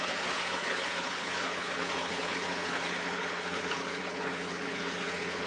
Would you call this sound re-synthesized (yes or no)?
yes